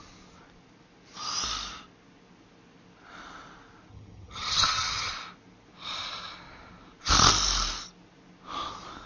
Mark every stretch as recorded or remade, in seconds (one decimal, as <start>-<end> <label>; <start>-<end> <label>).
0.0-3.9 recorded; 3.9-5.1 remade; 5.1-9.1 recorded